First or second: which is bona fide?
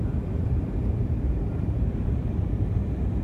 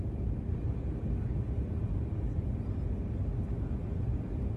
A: second